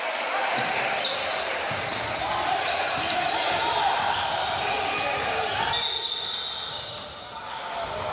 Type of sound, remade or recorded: recorded